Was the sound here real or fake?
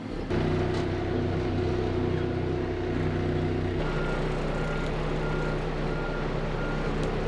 real